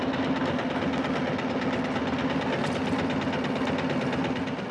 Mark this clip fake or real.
real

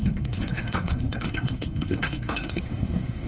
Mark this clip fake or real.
fake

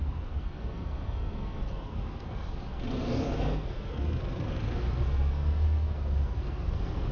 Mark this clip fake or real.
fake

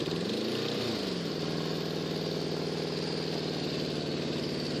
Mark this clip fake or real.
real